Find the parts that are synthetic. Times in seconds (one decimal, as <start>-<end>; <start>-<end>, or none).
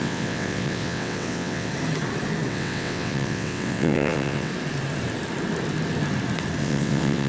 0.0-1.7; 2.5-4.5; 6.6-7.3